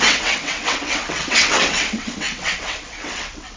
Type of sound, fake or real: fake